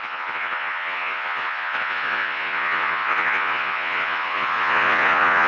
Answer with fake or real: fake